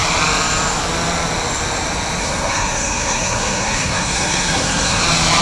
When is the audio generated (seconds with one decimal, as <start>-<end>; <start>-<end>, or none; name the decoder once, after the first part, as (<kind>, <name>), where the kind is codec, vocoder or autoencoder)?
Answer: 2.2-5.0 (codec, SNAC)